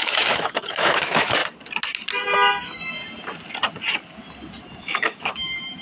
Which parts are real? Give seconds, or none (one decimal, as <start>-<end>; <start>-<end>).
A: 1.4-2.6; 3.0-4.8